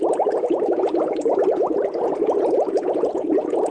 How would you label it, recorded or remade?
remade